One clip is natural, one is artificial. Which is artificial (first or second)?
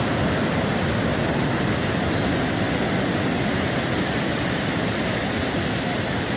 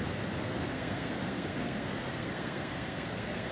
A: second